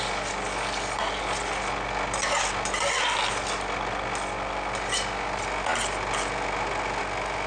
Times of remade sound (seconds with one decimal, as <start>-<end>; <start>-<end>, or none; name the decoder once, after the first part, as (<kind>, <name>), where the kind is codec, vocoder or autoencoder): none